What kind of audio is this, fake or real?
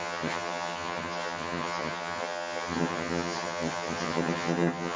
fake